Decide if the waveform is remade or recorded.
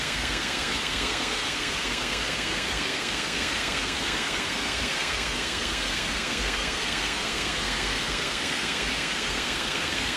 remade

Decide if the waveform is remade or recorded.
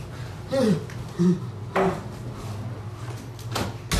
recorded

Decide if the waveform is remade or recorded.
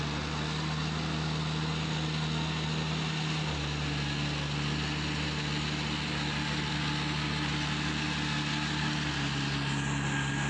recorded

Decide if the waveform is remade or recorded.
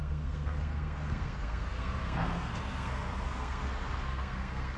remade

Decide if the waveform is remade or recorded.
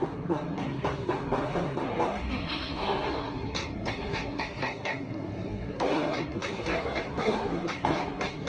remade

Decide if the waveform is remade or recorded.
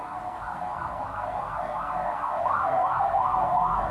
remade